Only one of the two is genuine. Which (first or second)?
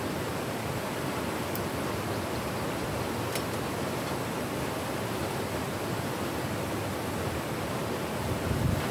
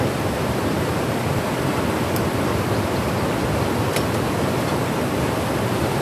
first